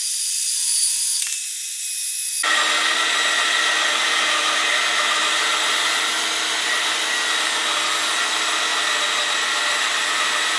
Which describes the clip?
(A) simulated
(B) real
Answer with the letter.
B